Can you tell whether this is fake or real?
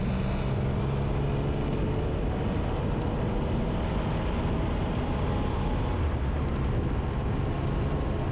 real